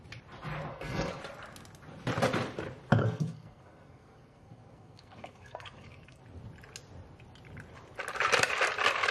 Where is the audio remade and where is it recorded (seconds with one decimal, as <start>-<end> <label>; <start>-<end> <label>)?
0.0-0.7 recorded; 0.7-1.2 remade; 1.2-3.0 recorded; 3.0-6.2 remade; 6.2-9.1 recorded